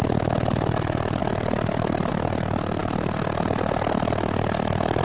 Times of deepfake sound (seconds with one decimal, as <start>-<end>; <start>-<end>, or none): none